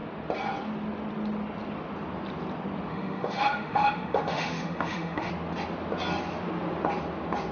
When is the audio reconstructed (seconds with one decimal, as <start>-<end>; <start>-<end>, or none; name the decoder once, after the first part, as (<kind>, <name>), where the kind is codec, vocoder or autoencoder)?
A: 2.9-5.3 (autoencoder, DAC-VAE)